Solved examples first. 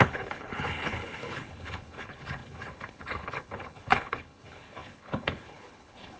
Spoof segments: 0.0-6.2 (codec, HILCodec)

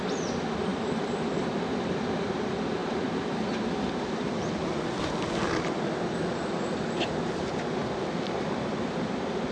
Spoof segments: 0.7-1.2 (vocoder, BigVGAN v2); 2.8-4.6; 7.8-9.5

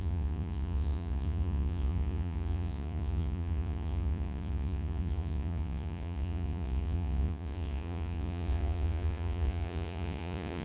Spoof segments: 0.0-10.6 (vocoder, Vocos)

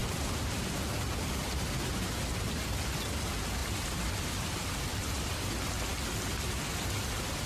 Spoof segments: 0.0-1.9 (vocoder, BigVGAN v2); 3.6-5.3

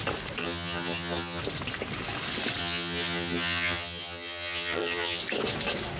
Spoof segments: 0.4-1.4 (vocoder, HiFi-GAN); 2.6-5.2

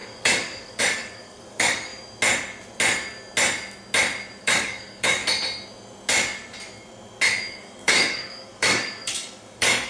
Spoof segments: 0.0-1.9 (codec, DAC); 4.4-5.2; 7.5-9.9